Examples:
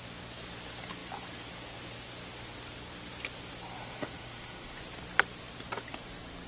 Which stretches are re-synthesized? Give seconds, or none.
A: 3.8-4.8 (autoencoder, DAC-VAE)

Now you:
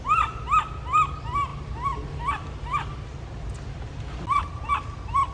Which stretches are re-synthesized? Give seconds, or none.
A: none

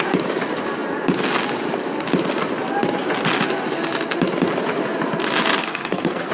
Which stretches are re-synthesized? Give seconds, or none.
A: 5.6-6.3 (codec, SNAC)

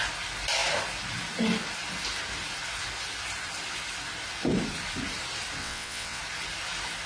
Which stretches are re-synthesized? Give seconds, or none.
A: 5.6-6.2 (vocoder, WaveNeXt)